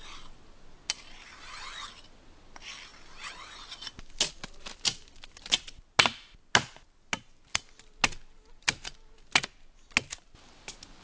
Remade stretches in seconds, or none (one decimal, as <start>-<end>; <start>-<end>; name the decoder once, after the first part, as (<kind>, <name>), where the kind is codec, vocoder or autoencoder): none